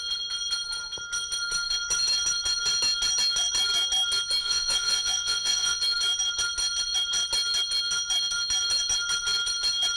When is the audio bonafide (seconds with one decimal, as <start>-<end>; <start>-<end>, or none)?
0.0-4.4; 5.8-10.0